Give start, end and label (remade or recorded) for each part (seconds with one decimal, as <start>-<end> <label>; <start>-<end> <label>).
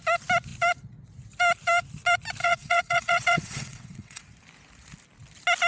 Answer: 0.0-2.4 recorded; 2.4-4.2 remade; 4.2-5.7 recorded